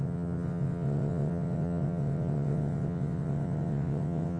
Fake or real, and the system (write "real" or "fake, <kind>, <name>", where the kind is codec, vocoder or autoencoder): fake, vocoder, WaveNeXt